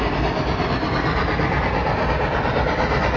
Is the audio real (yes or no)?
yes